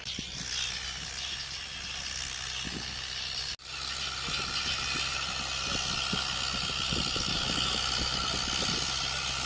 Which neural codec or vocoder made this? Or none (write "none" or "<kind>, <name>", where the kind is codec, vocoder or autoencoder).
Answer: none